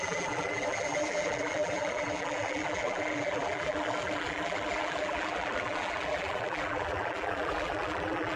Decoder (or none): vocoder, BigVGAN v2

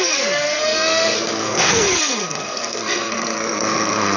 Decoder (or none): codec, SNAC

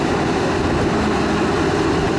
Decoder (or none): none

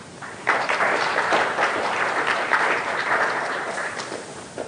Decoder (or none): vocoder, BigVGAN v2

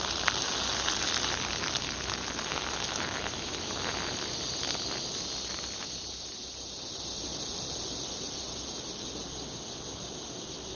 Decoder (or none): none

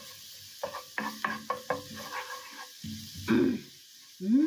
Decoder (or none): none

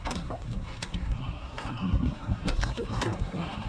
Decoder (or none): codec, SNAC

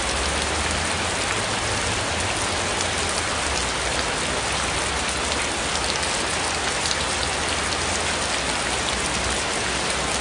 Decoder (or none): none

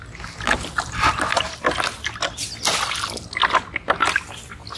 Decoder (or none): none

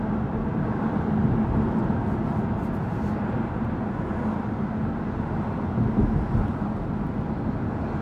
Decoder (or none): none